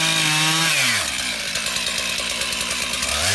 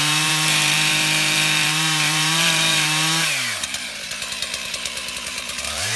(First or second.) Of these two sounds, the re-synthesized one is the second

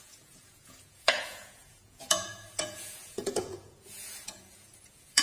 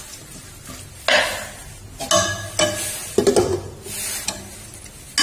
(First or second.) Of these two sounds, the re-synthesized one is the first